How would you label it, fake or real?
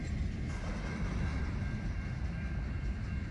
real